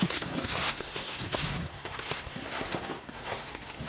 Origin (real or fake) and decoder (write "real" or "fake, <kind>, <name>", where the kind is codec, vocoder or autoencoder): fake, codec, SNAC